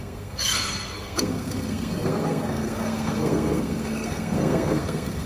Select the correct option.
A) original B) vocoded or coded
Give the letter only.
B